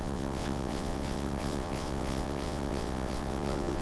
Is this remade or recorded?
remade